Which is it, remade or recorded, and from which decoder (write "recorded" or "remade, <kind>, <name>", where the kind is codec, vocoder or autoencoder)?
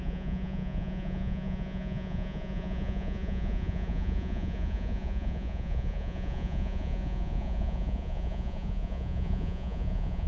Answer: remade, vocoder, Vocos